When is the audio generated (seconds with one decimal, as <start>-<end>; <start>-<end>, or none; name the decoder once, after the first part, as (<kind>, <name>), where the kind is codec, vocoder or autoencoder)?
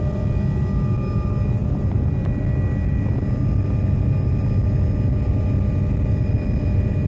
none